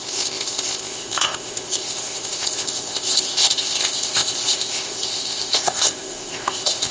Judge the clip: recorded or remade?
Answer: remade